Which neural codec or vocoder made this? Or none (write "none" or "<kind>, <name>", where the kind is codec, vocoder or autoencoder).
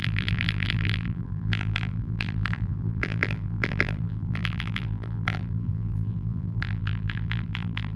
vocoder, BigVGAN v2